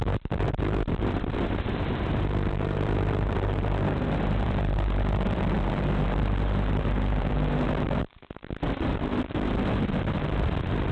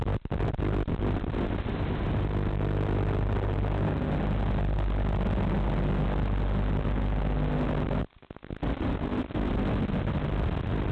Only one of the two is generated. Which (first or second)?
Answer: first